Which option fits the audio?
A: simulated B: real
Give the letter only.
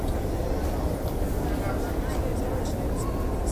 B